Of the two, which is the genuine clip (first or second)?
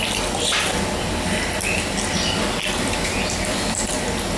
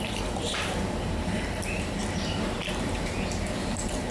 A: first